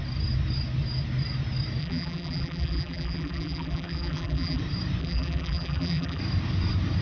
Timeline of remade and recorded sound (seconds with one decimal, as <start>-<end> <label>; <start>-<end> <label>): 0.0-1.8 recorded; 1.8-4.6 remade; 4.6-5.0 recorded; 5.0-6.2 remade; 6.2-7.0 recorded